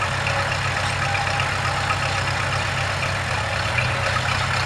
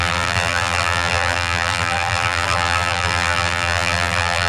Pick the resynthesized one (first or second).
second